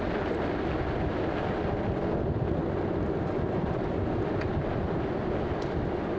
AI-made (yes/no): no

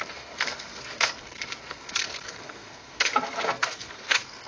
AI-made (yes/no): yes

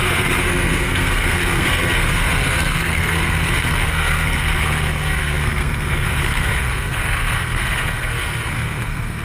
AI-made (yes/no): yes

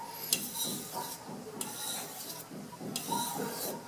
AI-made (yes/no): no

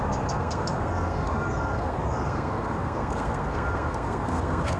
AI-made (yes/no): yes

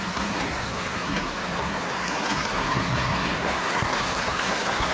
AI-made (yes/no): yes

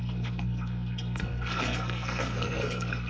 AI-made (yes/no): yes